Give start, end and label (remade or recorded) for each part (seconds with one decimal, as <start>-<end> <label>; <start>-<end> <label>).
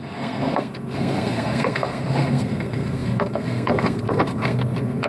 0.0-5.1 remade